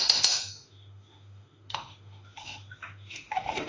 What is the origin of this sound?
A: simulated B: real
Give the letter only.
A